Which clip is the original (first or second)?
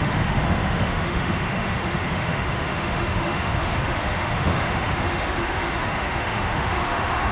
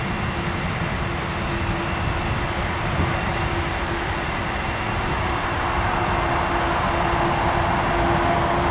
second